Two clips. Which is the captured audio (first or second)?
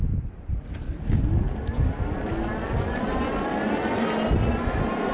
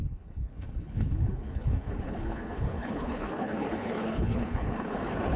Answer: first